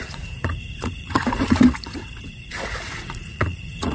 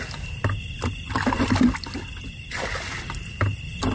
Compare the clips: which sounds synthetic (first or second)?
first